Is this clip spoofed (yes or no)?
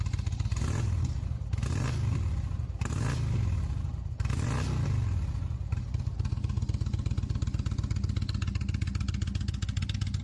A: no